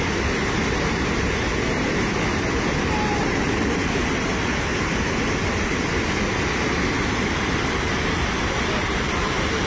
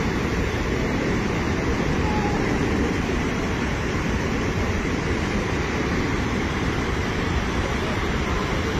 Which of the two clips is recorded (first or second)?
first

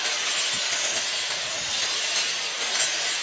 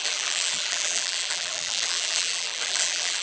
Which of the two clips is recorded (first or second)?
first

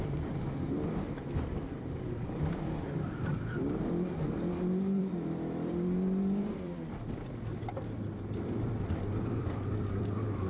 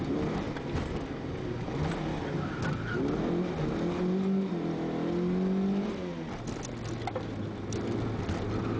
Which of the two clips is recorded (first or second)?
second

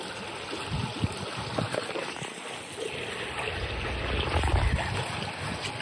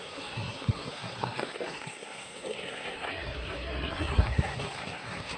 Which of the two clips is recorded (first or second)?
first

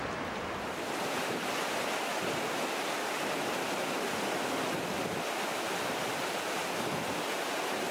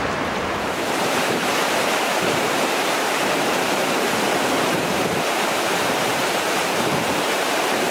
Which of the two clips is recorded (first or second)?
first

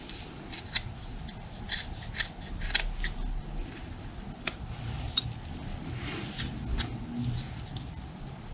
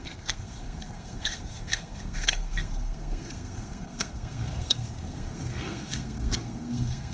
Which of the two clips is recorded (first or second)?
first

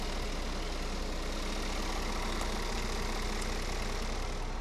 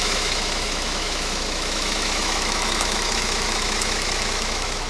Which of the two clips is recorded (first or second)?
first